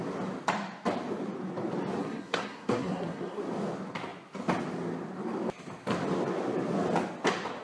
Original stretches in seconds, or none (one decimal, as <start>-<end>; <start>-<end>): 0.0-2.0; 3.4-7.6